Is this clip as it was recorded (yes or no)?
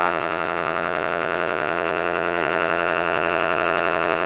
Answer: no